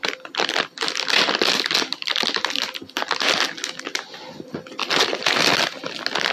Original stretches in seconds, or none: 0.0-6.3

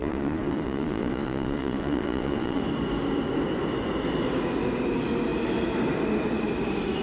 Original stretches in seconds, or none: 2.6-7.0

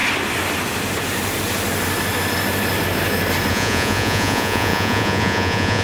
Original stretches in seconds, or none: 0.0-3.5

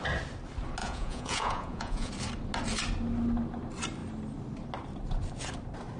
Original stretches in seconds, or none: 0.0-0.8; 2.1-6.0